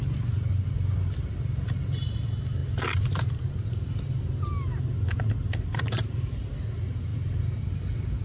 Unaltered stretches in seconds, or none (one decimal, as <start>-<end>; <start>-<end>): 0.0-2.6; 4.0-8.2